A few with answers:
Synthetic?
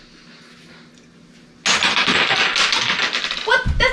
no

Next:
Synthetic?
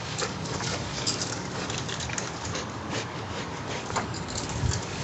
yes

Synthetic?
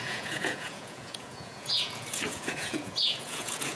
yes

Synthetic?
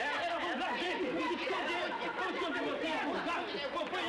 no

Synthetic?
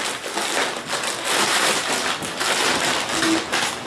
no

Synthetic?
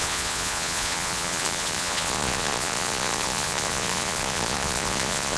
yes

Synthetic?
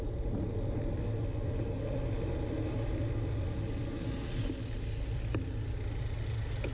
no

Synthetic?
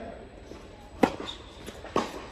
no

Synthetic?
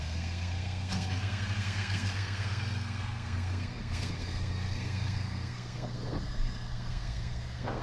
yes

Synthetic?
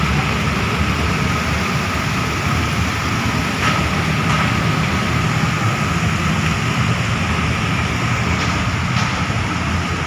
no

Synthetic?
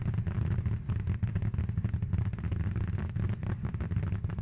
no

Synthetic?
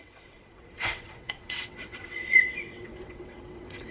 yes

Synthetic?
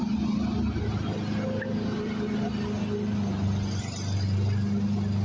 no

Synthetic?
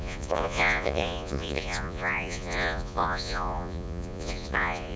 yes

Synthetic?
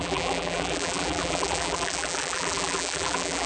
yes